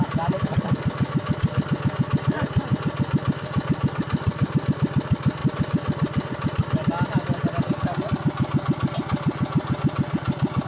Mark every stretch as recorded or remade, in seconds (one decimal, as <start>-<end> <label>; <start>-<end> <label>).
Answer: 0.0-10.7 recorded